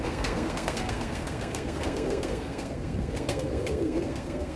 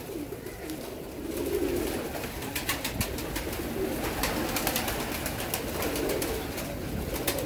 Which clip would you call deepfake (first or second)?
first